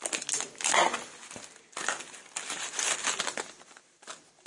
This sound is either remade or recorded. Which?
recorded